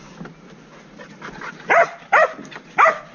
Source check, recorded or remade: recorded